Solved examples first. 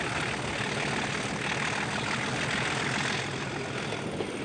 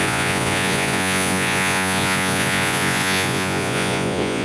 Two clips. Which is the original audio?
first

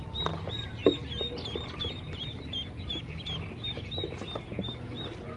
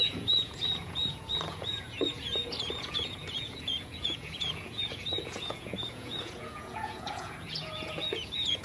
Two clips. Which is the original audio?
first